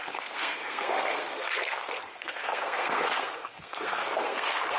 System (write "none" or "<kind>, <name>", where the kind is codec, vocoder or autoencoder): codec, SNAC